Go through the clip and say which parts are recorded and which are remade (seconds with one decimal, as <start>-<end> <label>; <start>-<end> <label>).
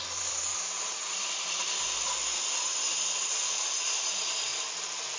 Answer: 0.0-0.5 recorded; 0.5-2.7 remade; 2.7-4.5 recorded; 4.5-5.2 remade